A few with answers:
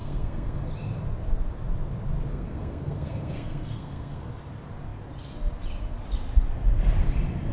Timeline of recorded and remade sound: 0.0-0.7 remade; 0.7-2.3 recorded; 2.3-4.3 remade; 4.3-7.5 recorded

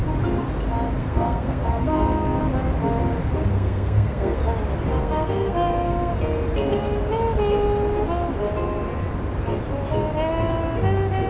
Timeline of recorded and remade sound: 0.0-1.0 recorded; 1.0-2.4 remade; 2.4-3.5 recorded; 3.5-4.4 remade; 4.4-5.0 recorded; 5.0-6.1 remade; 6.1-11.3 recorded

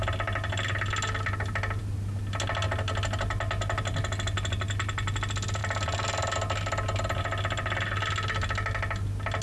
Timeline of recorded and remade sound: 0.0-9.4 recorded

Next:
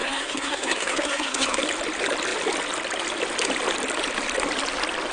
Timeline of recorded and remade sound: 0.0-1.6 remade; 1.6-5.1 recorded